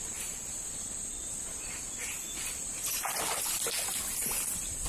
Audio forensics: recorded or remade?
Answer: recorded